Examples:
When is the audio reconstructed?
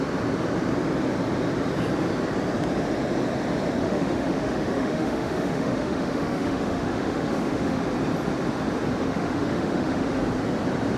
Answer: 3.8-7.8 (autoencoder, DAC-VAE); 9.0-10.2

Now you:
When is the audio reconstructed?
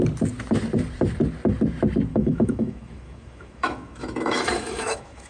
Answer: 2.1-5.3 (autoencoder, DAC-VAE)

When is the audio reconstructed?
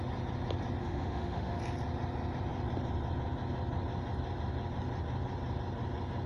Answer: 0.8-1.6 (autoencoder, DAC-VAE)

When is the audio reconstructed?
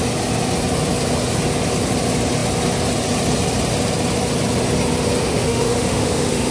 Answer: 5.2-6.5 (autoencoder, DAC-VAE)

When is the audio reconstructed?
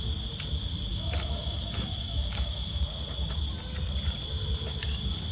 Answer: 0.9-2.8 (autoencoder, DAC-VAE)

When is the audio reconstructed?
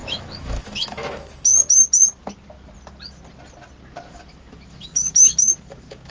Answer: 0.0-1.5 (autoencoder, DAC-VAE); 4.1-6.1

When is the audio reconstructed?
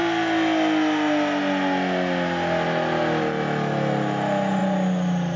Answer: none